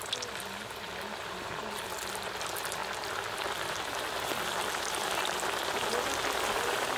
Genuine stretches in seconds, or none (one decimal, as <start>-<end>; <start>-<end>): 0.0-7.0